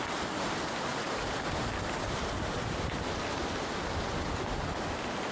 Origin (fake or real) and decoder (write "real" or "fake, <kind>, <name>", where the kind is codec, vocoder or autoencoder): real